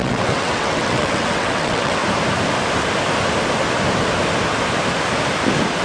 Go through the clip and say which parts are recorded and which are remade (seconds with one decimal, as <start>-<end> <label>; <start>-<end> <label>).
0.0-2.0 remade; 2.0-5.8 recorded